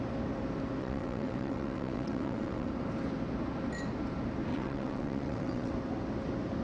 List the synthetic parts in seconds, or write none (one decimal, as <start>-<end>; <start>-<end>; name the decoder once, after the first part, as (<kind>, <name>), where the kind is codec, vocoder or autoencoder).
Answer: 0.8-2.7 (vocoder, WaveNeXt); 4.5-5.7